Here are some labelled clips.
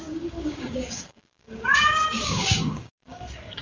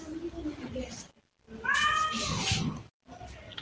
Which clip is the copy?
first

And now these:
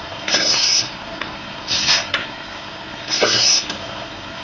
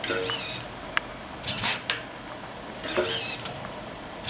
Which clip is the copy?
first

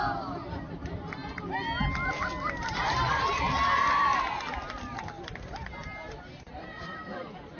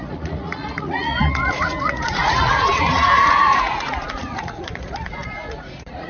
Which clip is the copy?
second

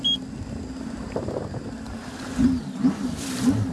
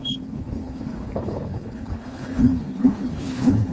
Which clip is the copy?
second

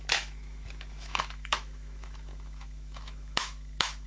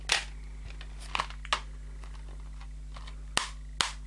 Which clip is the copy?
first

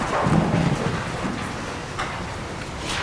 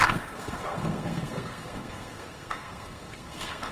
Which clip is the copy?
second